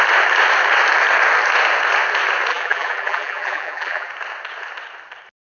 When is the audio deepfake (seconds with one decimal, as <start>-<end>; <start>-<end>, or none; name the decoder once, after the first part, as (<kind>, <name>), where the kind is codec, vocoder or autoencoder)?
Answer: 2.5-4.1 (vocoder, BigVGAN v2)